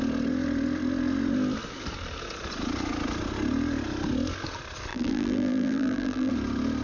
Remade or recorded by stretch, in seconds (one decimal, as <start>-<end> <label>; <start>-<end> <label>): 0.0-4.9 recorded; 4.9-6.3 remade; 6.3-6.8 recorded